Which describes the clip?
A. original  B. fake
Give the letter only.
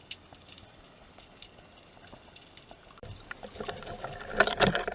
B